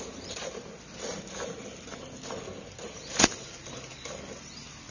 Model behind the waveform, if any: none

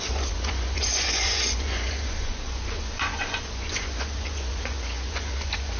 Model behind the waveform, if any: vocoder, Vocos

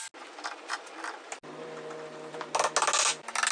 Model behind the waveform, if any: none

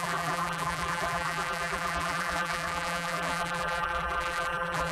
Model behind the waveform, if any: vocoder, BigVGAN v2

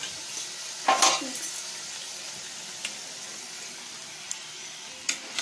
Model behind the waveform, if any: none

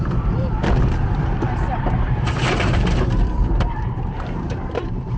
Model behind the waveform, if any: vocoder, BigVGAN v2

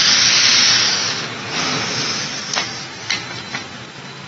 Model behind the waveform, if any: none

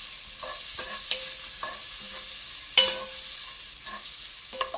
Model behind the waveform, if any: none